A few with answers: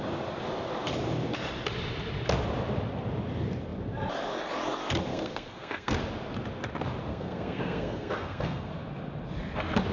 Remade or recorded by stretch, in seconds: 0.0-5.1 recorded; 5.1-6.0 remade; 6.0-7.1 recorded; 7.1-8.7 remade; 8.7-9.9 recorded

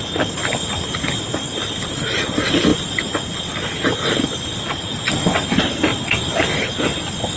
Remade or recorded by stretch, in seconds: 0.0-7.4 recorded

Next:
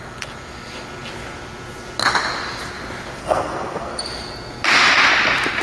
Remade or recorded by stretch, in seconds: 0.0-3.2 recorded; 3.2-4.0 remade; 4.0-5.6 recorded

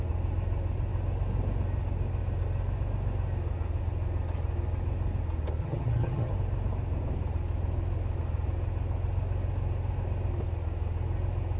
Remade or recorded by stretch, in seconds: 0.0-5.6 recorded; 5.6-6.3 remade; 6.3-11.6 recorded

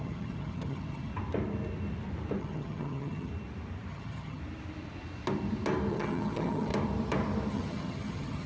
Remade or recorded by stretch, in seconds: 0.0-1.1 remade; 1.1-2.4 recorded; 2.4-3.3 remade; 3.3-3.9 recorded; 3.9-4.4 remade; 4.4-5.9 recorded; 5.9-6.7 remade; 6.7-7.5 recorded; 7.5-8.5 remade

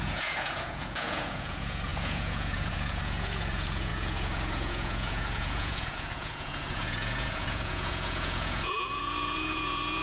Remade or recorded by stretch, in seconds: 0.0-10.0 remade